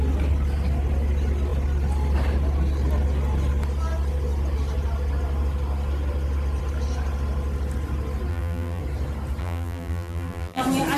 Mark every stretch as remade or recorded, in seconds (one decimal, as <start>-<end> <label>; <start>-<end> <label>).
0.0-8.3 recorded; 8.3-8.8 remade; 8.8-9.4 recorded; 9.4-10.6 remade; 10.6-11.0 recorded